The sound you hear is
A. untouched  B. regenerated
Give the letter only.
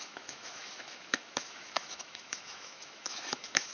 B